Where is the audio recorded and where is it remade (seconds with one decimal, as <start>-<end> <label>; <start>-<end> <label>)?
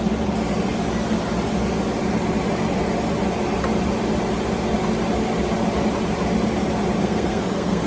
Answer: 0.0-7.0 recorded; 7.0-7.9 remade